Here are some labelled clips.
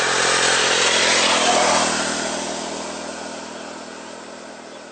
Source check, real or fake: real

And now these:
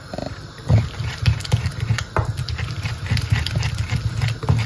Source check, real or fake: real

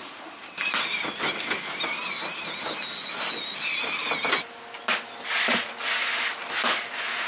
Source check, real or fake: real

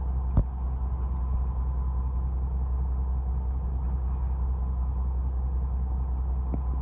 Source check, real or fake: real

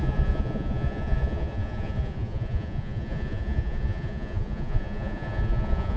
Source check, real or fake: fake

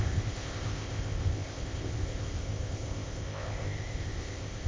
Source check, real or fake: fake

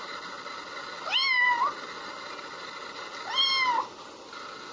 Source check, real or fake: real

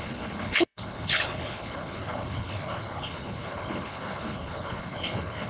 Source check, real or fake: fake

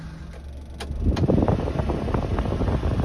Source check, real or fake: real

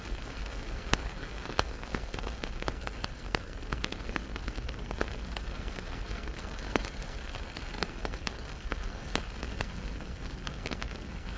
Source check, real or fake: fake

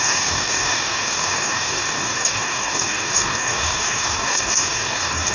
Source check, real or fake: fake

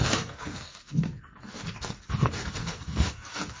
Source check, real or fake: fake